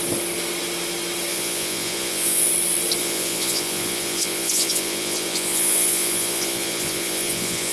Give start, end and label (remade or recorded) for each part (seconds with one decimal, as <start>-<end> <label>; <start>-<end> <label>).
0.0-1.3 recorded; 1.3-2.5 remade; 2.5-3.0 recorded; 3.0-7.7 remade